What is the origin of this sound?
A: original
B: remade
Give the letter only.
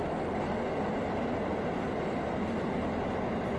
A